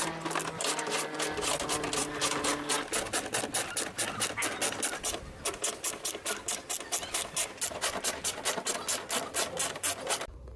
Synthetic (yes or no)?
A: no